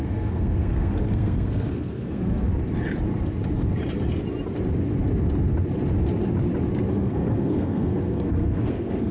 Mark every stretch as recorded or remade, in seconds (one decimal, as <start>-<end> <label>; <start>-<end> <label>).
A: 0.0-2.5 remade; 2.5-6.9 recorded; 6.9-9.1 remade